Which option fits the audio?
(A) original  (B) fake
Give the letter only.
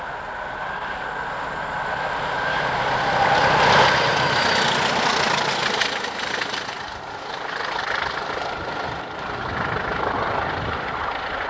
A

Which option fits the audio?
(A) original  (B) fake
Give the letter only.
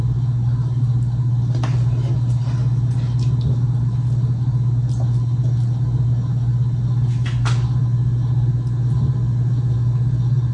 A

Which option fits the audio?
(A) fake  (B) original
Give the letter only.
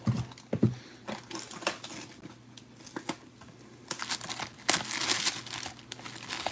B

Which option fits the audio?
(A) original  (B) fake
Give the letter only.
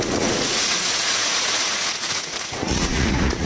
B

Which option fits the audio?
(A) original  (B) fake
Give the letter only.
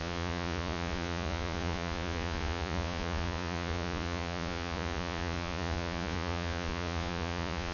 B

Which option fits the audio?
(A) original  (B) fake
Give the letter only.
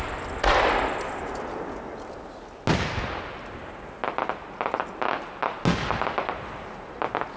A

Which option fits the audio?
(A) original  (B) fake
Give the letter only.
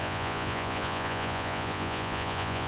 B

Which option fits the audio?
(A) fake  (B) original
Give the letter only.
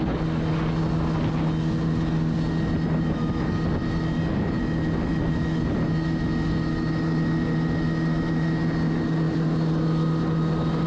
B